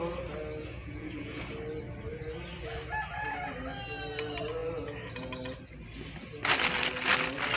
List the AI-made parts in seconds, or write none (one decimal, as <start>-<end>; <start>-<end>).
0.8-1.4